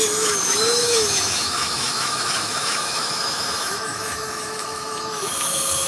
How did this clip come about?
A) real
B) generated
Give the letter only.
B